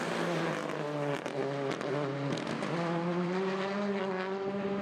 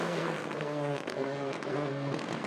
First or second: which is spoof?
second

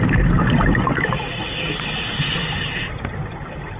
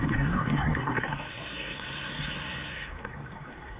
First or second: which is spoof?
second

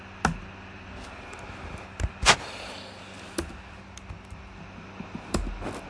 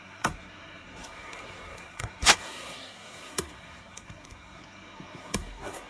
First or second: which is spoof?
second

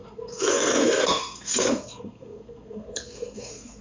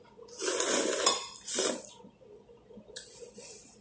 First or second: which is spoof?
first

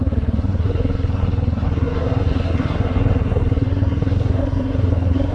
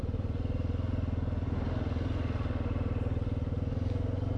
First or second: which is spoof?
first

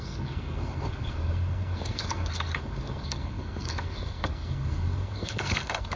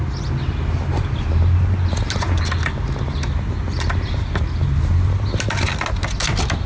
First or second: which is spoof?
first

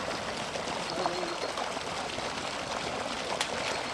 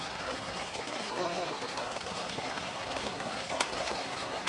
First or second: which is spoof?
second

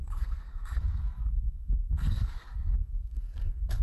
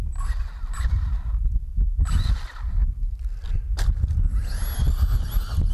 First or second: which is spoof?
first